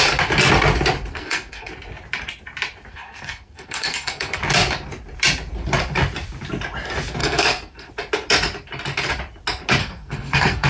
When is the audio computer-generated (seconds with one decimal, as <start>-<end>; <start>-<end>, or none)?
1.1-1.7; 2.9-4.4; 7.2-7.9; 9.8-10.7